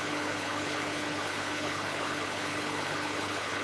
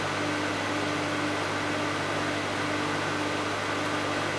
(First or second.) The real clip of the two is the second